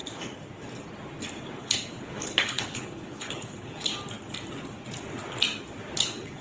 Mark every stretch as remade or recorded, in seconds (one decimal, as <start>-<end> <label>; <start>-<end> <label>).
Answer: 0.0-1.6 recorded; 1.6-3.9 remade; 3.9-6.0 recorded; 6.0-6.4 remade